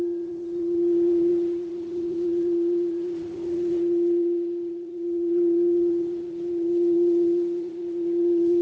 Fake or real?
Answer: fake